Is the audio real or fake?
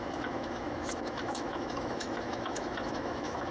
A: fake